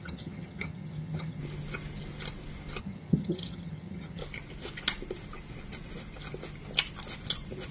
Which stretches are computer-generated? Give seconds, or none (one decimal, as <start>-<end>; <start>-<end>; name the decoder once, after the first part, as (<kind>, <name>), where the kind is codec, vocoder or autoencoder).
0.0-1.4 (vocoder, HiFi-GAN); 2.8-4.2